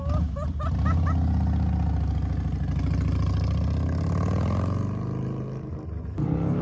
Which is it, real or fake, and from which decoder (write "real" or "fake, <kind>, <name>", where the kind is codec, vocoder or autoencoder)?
real